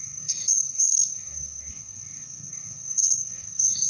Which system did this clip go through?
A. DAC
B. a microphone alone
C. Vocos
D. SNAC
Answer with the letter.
D